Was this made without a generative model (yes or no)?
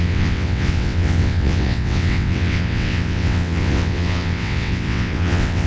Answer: no